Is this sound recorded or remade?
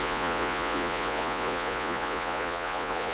remade